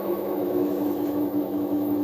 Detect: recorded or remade remade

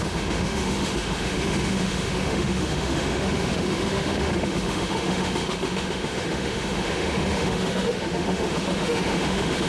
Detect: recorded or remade remade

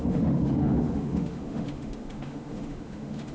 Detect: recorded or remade remade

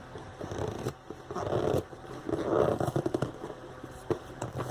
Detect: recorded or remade recorded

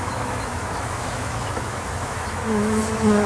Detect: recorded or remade remade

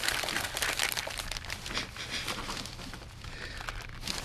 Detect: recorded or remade recorded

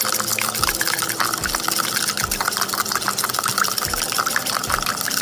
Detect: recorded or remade recorded